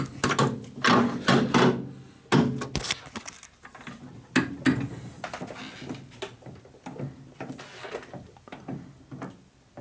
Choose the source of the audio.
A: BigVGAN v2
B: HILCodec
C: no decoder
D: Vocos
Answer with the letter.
C